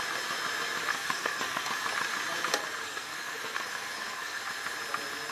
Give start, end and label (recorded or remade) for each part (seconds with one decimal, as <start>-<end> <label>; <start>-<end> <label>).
0.0-0.9 recorded; 0.9-1.7 remade; 1.7-2.8 recorded; 2.8-4.4 remade; 4.4-5.3 recorded